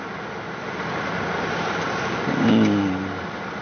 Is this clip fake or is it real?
real